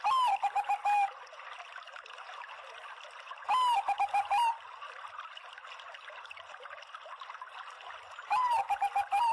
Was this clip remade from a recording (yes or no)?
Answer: no